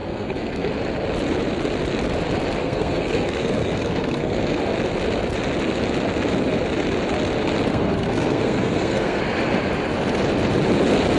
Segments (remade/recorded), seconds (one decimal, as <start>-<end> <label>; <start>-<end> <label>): 0.0-0.7 remade; 0.7-2.6 recorded; 2.6-4.6 remade; 4.6-7.7 recorded; 7.7-9.2 remade; 9.2-11.2 recorded